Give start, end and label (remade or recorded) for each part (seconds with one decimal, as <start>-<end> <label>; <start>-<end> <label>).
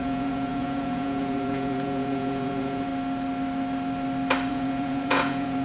0.0-2.9 remade; 2.9-4.5 recorded; 4.5-5.6 remade